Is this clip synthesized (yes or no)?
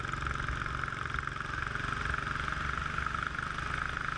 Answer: no